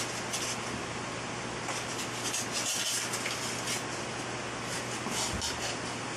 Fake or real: real